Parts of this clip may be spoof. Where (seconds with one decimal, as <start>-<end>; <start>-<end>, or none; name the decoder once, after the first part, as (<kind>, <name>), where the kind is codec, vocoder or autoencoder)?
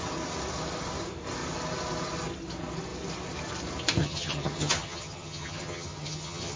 4.0-6.6 (vocoder, HiFi-GAN)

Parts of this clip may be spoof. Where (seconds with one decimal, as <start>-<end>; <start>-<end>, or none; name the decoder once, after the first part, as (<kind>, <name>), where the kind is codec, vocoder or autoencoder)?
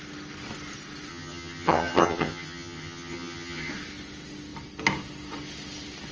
1.1-3.7 (vocoder, HiFi-GAN)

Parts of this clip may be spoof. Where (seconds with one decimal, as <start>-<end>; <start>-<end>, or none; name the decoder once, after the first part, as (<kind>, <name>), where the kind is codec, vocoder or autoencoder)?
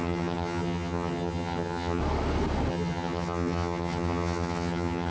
0.0-2.0 (vocoder, HiFi-GAN); 2.7-5.1